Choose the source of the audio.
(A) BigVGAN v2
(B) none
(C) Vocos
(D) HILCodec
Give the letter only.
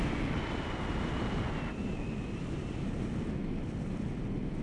B